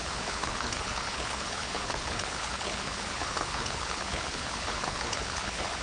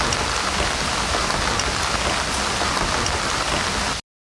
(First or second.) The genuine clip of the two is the second